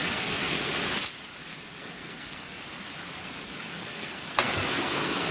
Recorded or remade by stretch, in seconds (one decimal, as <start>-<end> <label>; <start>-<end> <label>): 0.0-0.7 remade; 0.7-1.5 recorded; 1.5-2.6 remade; 2.6-3.2 recorded; 3.2-5.3 remade